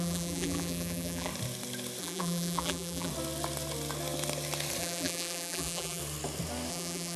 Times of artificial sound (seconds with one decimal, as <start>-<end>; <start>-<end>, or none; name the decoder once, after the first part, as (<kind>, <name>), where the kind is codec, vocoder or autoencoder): 0.0-1.3 (vocoder, BigVGAN v2); 2.0-3.1; 4.8-6.0; 6.7-7.2